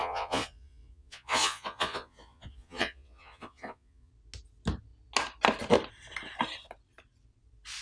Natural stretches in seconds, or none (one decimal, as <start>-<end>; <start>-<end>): 4.1-7.8